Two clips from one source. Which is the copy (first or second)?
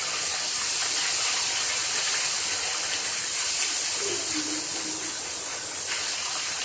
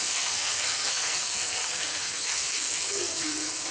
second